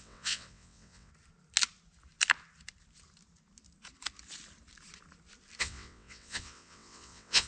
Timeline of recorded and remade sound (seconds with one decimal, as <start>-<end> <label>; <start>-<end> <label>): 0.0-1.1 remade; 1.1-5.6 recorded; 5.6-7.5 remade